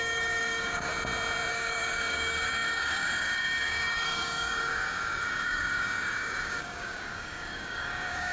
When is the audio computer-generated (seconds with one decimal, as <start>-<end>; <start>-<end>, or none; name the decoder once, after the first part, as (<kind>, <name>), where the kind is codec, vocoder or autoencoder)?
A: 0.0-0.9 (codec, DAC); 1.5-8.3

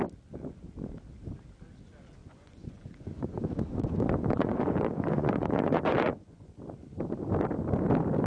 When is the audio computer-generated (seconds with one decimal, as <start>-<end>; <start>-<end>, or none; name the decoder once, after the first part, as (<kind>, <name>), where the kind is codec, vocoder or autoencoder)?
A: 2.2-6.5 (vocoder, Vocos)

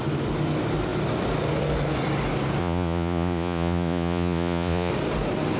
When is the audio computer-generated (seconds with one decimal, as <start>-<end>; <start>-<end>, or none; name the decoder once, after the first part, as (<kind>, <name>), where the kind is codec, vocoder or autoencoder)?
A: 2.6-4.9 (vocoder, Vocos)

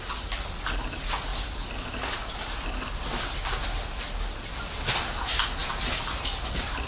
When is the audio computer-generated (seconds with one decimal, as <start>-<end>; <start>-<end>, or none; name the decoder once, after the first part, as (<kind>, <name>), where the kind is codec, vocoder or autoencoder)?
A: none

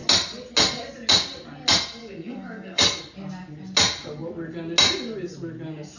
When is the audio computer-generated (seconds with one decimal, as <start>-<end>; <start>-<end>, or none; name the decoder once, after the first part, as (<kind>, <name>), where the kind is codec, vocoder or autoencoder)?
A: 2.0-3.0 (codec, DAC)

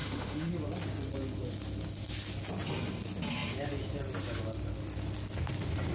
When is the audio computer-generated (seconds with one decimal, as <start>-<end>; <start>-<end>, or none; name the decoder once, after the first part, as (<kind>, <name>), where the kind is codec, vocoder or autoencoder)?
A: 0.0-0.5 (autoencoder, DAC-VAE)